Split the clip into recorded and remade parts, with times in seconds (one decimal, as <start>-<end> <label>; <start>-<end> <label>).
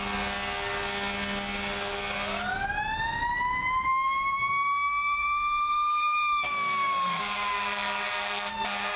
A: 0.0-3.9 recorded; 3.9-7.2 remade; 7.2-9.0 recorded